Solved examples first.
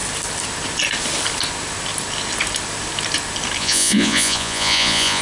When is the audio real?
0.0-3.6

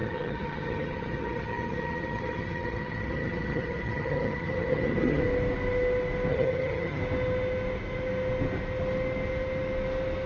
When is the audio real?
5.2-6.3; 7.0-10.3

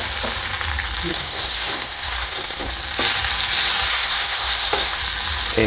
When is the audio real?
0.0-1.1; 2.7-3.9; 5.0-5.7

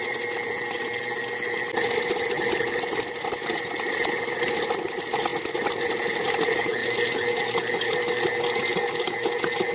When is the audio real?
0.0-9.7